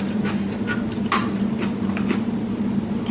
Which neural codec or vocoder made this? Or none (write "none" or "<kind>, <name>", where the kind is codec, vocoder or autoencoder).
none